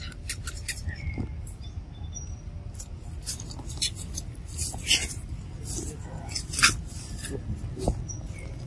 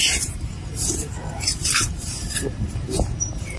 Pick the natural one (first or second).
first